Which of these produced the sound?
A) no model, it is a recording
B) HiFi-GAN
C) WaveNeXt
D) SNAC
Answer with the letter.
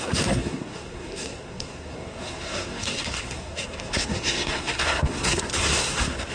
D